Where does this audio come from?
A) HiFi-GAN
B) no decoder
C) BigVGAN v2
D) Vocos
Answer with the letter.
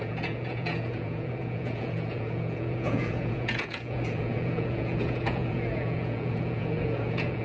D